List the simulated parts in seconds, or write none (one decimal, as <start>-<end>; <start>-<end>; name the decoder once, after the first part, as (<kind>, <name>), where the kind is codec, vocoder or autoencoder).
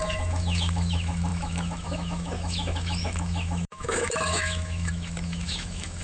0.0-6.0 (autoencoder, DAC-VAE)